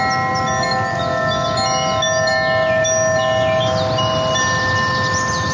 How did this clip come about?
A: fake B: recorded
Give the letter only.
B